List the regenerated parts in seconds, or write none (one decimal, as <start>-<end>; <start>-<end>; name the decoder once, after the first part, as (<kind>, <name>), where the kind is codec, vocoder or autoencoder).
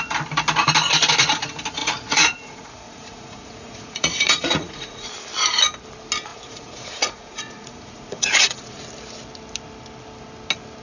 1.8-5.1 (vocoder, Vocos); 6.3-8.8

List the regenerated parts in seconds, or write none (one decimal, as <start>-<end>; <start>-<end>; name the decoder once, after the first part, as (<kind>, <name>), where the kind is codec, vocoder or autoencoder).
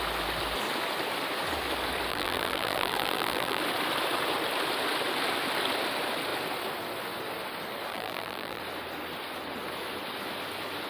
2.1-3.6 (vocoder, BigVGAN v2); 7.9-8.6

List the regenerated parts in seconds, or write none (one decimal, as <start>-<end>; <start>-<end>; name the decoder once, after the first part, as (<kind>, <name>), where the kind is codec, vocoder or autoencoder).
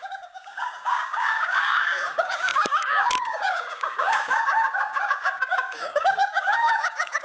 0.0-7.2 (codec, DAC)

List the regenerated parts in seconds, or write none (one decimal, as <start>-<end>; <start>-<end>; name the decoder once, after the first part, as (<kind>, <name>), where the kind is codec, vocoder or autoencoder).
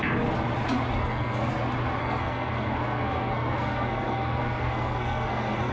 1.0-1.5 (codec, SNAC); 2.0-5.7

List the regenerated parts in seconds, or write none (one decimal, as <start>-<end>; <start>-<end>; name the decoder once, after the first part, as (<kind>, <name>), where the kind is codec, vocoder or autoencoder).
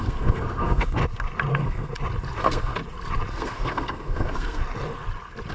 0.0-1.0 (codec, SNAC); 1.5-1.9; 2.4-2.8; 3.3-4.6